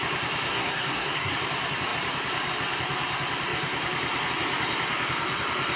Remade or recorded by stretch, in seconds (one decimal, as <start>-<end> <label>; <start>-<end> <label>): 0.0-0.5 recorded; 0.5-1.3 remade; 1.3-5.8 recorded